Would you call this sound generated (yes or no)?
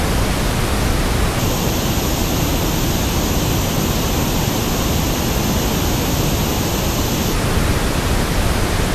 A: no